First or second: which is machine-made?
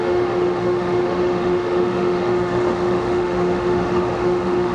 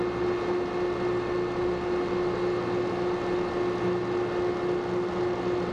first